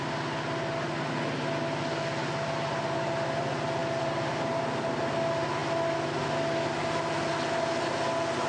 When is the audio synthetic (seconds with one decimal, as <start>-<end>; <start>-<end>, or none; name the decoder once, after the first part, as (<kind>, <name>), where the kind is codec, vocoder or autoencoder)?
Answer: none